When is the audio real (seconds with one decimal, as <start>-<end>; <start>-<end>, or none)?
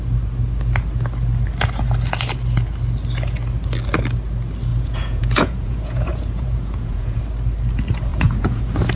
0.0-4.7; 7.2-8.1; 8.6-9.0